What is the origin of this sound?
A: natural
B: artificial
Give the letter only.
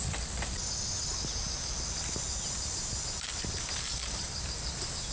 A